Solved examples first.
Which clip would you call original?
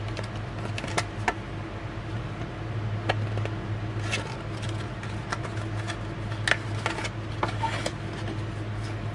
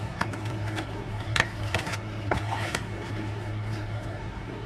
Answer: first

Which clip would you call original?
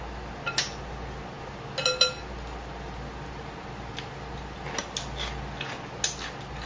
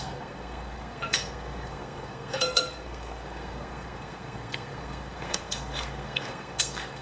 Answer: first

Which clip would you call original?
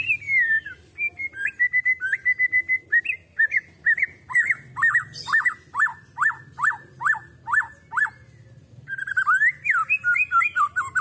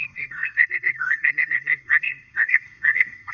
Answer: first